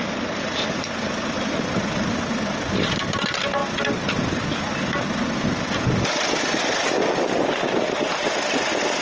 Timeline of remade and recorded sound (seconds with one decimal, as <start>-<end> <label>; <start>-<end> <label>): 0.0-9.0 recorded